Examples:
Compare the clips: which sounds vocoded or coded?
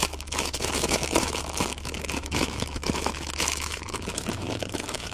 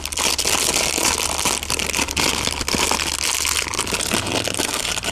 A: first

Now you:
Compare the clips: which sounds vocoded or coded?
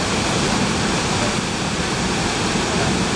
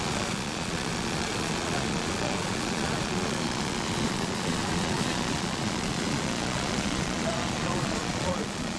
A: second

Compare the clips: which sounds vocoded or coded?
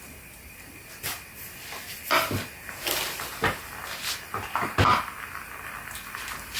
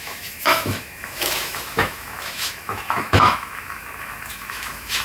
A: second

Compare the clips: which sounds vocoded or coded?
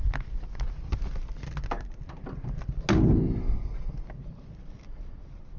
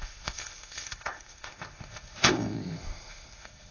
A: second